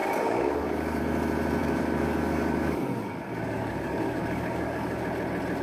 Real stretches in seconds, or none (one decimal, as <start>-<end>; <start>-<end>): 1.0-1.6; 5.0-5.6